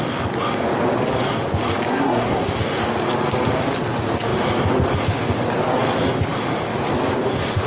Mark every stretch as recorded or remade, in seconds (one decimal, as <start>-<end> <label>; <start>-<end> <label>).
0.0-1.9 recorded; 1.9-2.5 remade; 2.5-7.7 recorded